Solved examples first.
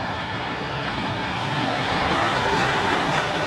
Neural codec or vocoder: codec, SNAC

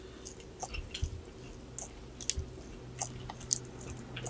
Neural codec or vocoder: none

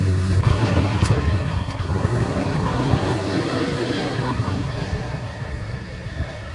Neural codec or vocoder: codec, SNAC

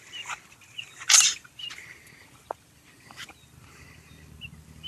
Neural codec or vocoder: none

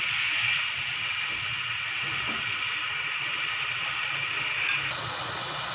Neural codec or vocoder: none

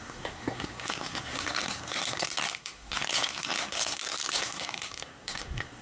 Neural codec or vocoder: codec, SNAC